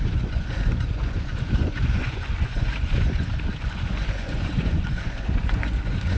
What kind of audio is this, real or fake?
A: fake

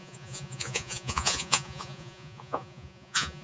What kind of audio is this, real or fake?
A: fake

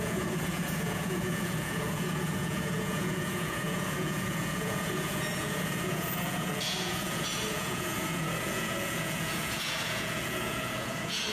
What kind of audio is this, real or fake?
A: fake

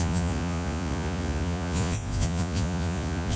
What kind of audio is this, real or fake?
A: fake